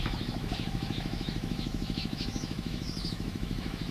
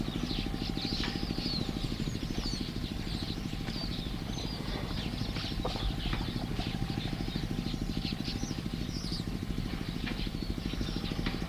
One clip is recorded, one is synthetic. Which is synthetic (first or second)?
first